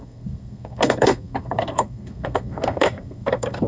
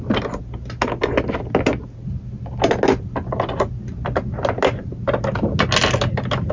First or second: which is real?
second